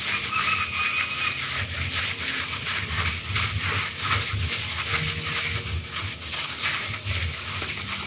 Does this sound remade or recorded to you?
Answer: recorded